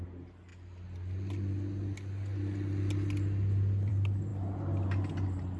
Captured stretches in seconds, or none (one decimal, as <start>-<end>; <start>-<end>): 0.0-5.6